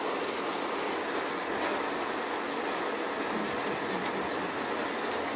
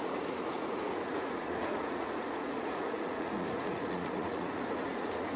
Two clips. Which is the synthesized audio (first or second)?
second